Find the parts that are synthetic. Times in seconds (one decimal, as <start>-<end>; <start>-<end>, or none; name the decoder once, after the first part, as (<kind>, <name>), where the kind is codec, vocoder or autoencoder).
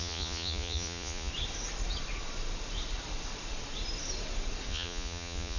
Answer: 0.0-1.3 (vocoder, Vocos); 4.7-5.6